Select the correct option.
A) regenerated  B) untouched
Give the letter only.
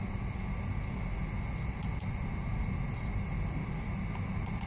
B